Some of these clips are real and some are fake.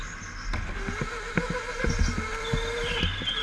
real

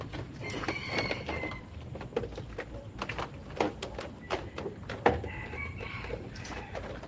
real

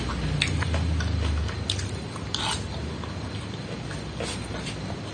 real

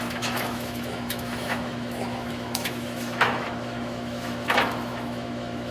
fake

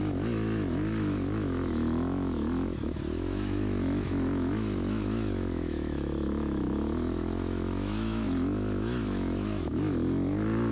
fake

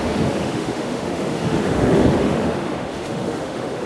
fake